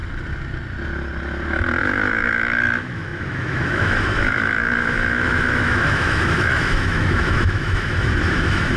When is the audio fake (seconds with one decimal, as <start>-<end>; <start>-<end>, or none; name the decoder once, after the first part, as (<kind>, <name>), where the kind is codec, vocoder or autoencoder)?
1.8-8.8 (autoencoder, DAC-VAE)